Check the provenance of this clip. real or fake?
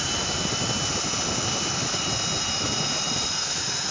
real